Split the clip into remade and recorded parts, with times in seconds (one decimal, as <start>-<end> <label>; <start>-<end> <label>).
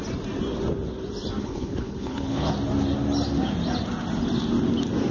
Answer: 0.0-1.4 recorded; 1.4-2.5 remade; 2.5-5.1 recorded